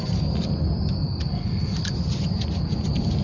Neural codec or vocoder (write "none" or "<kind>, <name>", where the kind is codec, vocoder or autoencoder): none